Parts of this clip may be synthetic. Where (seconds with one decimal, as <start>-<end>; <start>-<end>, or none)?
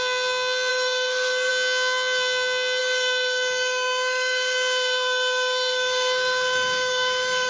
0.7-1.5; 2.8-7.5